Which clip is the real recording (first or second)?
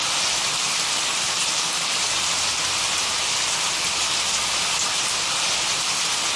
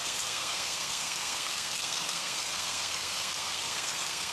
first